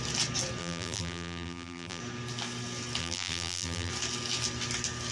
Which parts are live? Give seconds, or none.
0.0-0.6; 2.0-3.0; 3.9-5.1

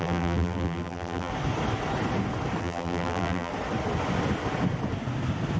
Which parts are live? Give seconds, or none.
1.3-2.6; 3.5-5.6

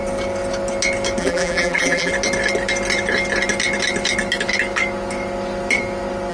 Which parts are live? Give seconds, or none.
0.0-1.2; 2.1-6.3

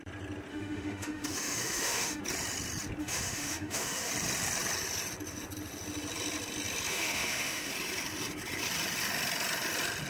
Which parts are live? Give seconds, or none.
0.0-0.5; 2.2-3.0; 4.1-6.9; 7.7-10.1

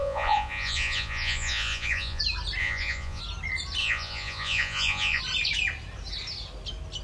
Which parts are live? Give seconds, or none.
2.2-2.6; 3.2-3.8; 5.2-7.0

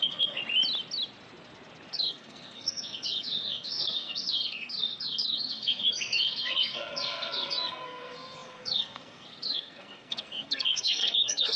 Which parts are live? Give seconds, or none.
0.4-1.9